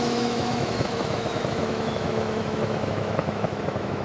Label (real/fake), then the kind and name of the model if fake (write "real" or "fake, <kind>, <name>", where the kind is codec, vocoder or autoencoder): fake, autoencoder, DAC-VAE